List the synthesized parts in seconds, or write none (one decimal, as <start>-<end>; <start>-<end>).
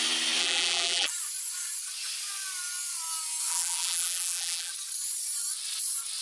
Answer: 0.4-1.1; 3.5-4.7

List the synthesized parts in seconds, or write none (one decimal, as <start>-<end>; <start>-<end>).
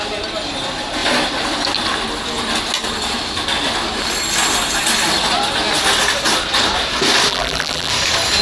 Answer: 7.3-7.9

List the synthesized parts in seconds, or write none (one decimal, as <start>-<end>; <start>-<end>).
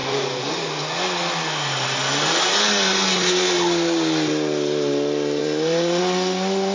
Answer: 0.0-0.5; 5.4-6.0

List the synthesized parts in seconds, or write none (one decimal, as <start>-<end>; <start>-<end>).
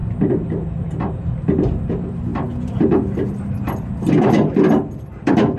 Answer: 0.0-5.6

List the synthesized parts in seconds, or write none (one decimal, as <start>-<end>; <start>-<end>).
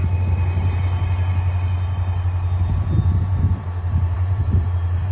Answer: 3.1-5.1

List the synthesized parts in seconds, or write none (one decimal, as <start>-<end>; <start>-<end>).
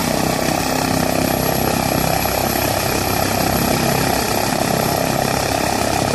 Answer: 0.0-0.6; 2.4-6.1